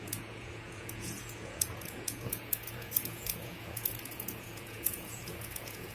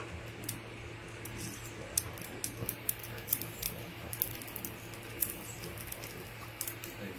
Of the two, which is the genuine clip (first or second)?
second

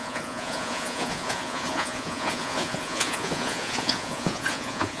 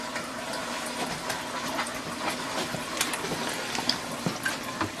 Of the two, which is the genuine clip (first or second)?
second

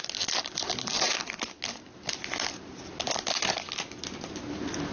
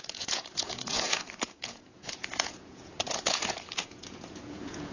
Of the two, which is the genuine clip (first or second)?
first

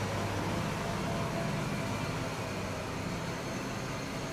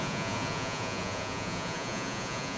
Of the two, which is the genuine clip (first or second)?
first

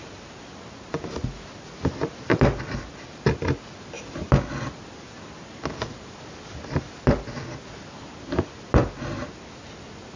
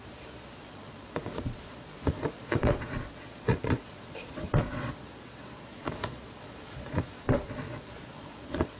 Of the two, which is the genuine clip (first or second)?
first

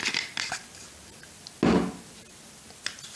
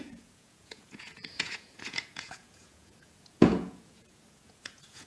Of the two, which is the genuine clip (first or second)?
first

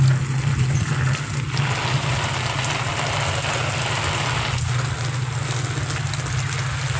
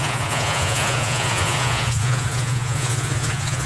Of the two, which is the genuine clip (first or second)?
first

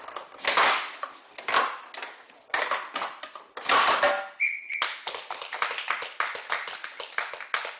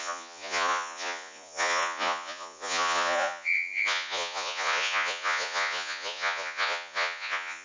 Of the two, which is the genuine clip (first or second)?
first